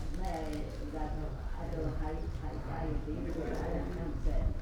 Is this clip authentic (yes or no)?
yes